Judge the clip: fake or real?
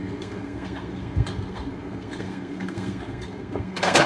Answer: fake